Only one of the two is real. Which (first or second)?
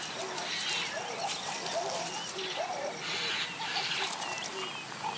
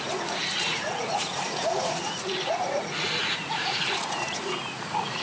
first